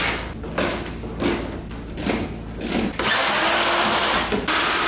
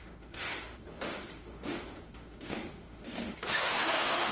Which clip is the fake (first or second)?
second